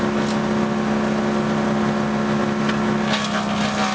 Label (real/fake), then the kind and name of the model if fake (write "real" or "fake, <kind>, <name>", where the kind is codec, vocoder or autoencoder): real